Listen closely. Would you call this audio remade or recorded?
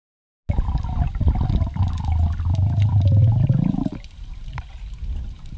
recorded